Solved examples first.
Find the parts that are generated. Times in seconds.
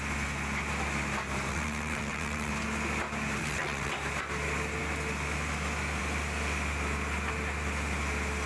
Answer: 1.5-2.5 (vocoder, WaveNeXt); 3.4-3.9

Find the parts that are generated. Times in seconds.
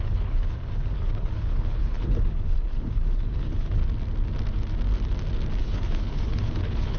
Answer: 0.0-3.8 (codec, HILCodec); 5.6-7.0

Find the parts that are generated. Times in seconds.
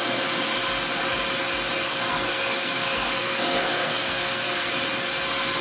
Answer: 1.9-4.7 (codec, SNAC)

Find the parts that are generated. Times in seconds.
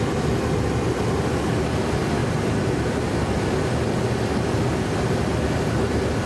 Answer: 2.2-3.3 (vocoder, BigVGAN v2)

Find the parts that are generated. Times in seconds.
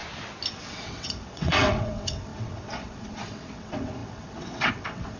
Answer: 0.5-5.2 (vocoder, WaveNeXt)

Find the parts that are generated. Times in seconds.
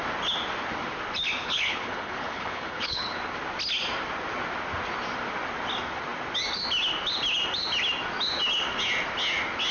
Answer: 1.4-3.2 (codec, HILCodec)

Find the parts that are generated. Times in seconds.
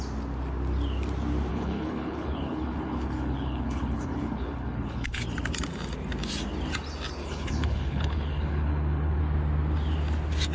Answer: 1.5-5.2 (codec, HILCodec); 7.2-9.2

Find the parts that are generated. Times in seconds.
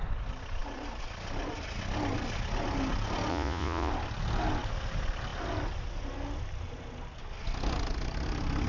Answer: 3.3-3.9 (vocoder, Vocos)